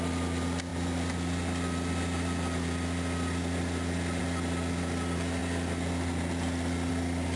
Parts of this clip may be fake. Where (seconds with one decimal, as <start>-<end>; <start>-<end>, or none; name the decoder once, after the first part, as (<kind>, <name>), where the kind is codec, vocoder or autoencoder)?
none